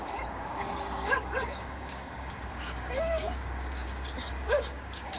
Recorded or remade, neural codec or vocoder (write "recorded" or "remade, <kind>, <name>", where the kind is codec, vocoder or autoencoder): remade, codec, DAC